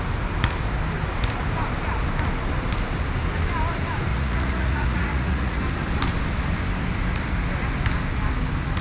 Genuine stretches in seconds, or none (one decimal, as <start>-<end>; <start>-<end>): 0.0-4.1; 5.6-8.8